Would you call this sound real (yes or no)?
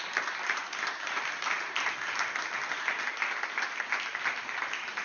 yes